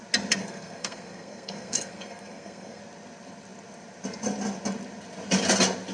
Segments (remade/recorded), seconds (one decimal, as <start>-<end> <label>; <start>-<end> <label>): 0.0-0.4 recorded; 0.4-2.8 remade; 2.8-5.9 recorded